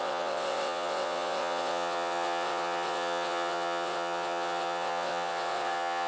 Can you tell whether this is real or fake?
fake